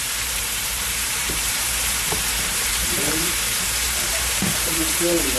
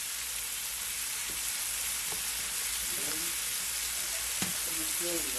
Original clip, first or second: second